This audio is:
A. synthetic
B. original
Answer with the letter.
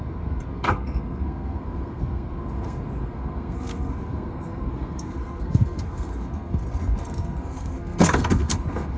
A